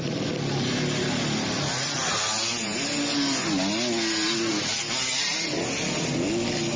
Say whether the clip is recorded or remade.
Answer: recorded